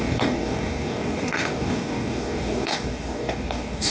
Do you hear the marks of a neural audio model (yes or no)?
yes